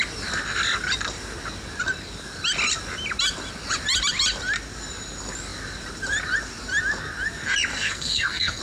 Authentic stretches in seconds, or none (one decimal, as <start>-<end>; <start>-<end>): 0.0-7.7